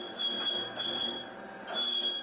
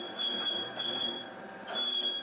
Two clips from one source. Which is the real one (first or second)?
first